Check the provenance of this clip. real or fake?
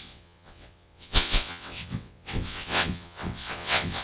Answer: fake